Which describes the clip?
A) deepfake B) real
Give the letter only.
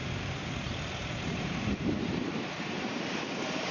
A